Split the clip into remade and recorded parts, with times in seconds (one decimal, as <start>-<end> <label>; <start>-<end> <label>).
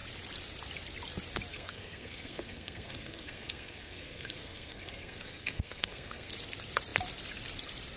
0.0-1.5 recorded; 1.5-6.3 remade; 6.3-8.0 recorded